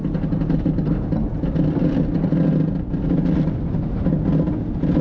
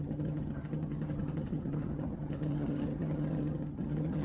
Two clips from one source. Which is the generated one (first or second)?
second